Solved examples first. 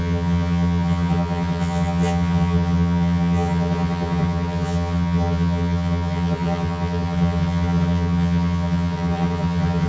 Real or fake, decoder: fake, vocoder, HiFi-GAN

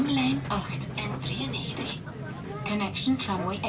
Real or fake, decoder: real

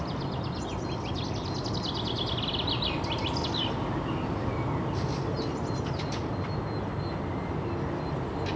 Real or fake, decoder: real